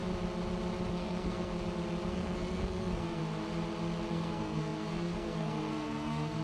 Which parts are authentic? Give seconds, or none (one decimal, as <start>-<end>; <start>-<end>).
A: 0.0-0.9; 1.5-2.1; 3.2-4.1